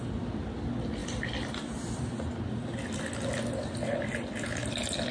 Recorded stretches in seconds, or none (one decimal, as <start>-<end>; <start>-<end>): 0.0-5.1